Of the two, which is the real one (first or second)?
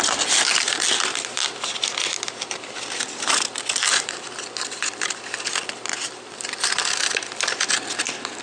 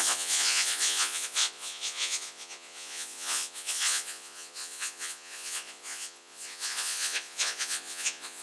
first